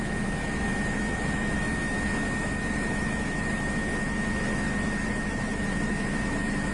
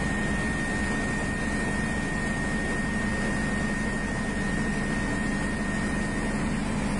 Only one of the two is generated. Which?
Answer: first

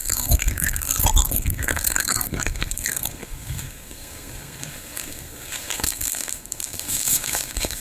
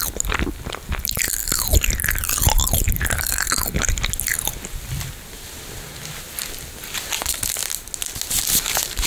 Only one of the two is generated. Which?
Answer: first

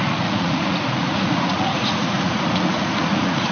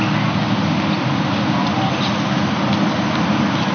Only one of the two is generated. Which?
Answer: first